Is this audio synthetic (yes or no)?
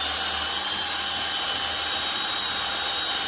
no